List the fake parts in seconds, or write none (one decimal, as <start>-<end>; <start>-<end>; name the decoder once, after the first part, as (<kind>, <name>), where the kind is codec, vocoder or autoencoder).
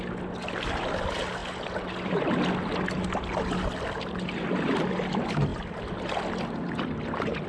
none